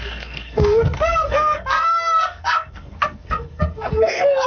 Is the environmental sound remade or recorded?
remade